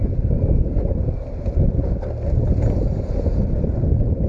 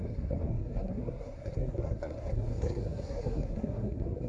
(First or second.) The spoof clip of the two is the second